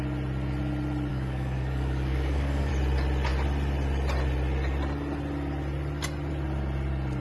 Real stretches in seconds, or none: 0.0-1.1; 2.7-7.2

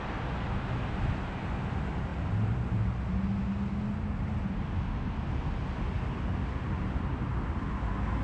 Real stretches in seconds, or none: 0.0-8.2